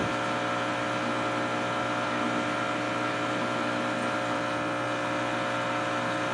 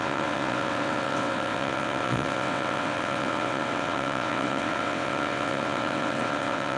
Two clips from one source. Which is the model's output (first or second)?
second